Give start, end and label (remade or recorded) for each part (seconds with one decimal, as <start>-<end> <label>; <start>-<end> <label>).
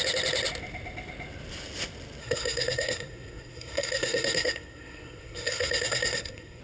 0.0-2.2 recorded; 2.2-6.6 remade